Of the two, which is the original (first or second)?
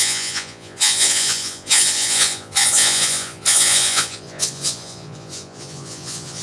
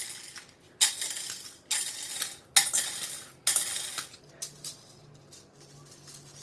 second